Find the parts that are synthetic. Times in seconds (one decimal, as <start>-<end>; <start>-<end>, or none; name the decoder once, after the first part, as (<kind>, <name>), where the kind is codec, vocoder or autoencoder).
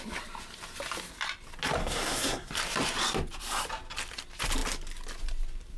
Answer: 1.8-2.5 (codec, SNAC)